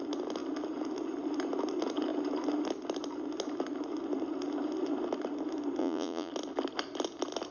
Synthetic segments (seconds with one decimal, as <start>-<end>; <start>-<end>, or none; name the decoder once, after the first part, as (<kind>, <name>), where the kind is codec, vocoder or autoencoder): 5.8-6.3 (vocoder, Vocos)